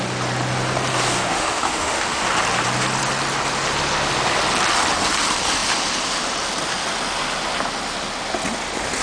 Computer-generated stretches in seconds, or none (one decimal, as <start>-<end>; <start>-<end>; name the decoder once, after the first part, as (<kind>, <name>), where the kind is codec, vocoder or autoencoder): 1.3-2.2 (autoencoder, DAC-VAE)

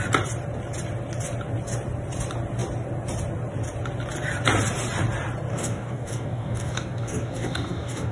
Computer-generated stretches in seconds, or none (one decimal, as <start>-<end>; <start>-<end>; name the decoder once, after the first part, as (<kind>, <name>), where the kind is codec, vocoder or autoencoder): 5.5-8.1 (codec, DAC)

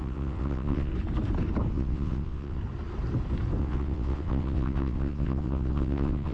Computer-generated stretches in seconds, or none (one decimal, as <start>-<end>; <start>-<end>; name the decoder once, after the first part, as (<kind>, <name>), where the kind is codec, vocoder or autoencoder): 0.0-0.9 (vocoder, WaveNeXt); 1.7-2.6; 3.6-6.3

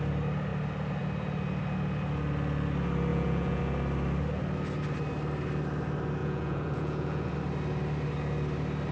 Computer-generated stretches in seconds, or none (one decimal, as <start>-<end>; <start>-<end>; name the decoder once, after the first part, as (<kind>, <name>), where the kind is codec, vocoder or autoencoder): 3.1-3.6 (vocoder, Vocos); 6.2-7.3